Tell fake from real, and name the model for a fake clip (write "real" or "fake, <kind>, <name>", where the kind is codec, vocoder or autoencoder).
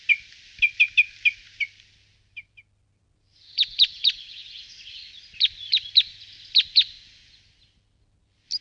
real